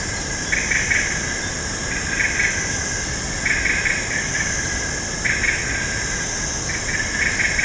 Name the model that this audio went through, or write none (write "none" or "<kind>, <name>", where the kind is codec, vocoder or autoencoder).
none